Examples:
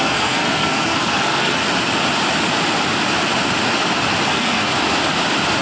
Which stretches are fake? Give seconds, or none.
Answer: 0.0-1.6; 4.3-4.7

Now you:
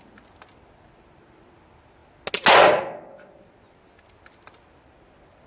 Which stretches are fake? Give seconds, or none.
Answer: none